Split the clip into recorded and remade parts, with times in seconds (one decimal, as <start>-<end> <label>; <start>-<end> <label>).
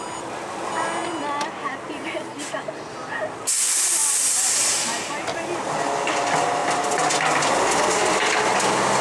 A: 0.0-9.0 recorded